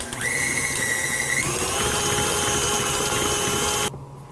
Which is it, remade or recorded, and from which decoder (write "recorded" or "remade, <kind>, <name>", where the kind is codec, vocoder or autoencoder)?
recorded